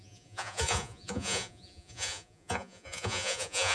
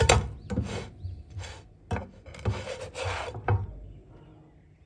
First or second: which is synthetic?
first